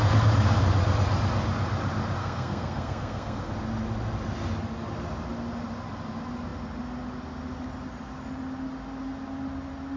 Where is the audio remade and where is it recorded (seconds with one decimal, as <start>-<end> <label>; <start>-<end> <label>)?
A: 0.0-2.2 recorded; 2.2-3.5 remade; 3.5-10.0 recorded